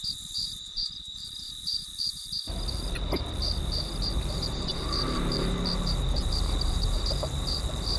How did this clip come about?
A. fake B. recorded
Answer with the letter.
A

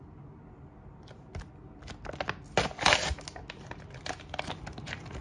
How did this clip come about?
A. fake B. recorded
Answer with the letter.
B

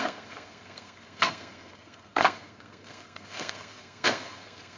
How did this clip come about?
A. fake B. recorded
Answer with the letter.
A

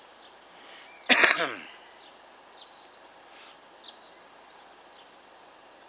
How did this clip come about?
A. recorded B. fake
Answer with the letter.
A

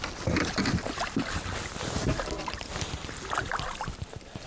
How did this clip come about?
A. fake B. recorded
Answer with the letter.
B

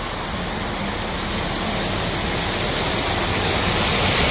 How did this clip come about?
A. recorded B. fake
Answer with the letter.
A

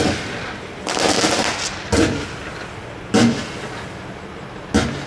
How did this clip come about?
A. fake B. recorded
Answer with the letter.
B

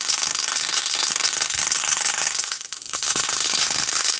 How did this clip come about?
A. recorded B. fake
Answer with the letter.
B